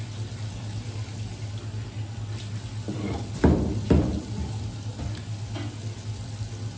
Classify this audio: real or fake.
real